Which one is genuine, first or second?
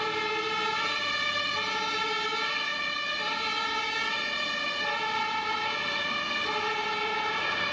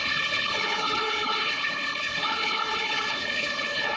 first